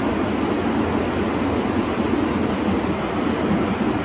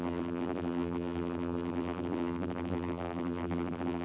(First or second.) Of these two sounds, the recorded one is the first